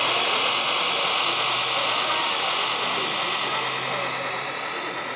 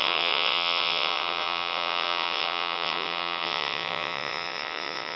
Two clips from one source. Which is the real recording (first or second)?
first